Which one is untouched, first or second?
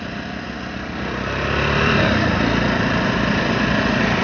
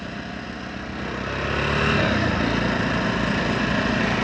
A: second